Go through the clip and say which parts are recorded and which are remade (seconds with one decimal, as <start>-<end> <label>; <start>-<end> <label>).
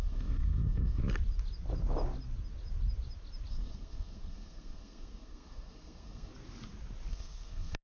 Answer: 0.0-1.0 remade; 1.0-3.5 recorded; 3.5-6.3 remade; 6.3-7.1 recorded; 7.1-7.8 remade